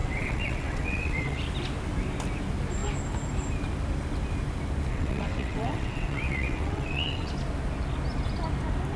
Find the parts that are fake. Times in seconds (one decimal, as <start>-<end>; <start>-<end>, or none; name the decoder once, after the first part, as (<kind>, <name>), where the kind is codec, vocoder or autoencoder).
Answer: 0.0-1.4 (vocoder, WaveNeXt); 4.9-7.3